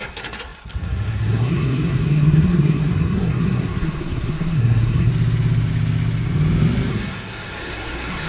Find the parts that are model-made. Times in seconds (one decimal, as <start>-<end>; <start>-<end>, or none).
0.0-5.1; 6.9-8.3

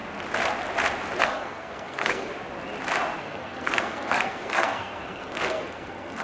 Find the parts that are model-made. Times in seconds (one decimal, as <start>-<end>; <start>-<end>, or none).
1.2-2.3; 3.2-6.2

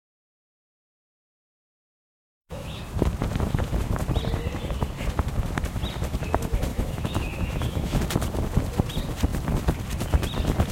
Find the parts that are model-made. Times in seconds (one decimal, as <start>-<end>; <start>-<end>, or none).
1.2-2.8; 6.7-8.0

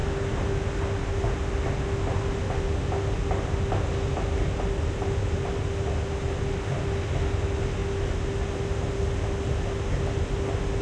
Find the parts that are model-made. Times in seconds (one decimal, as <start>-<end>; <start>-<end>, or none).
none

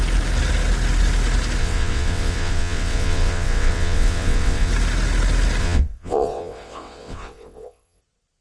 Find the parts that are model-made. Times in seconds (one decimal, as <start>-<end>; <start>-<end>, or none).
1.6-4.7; 5.6-8.0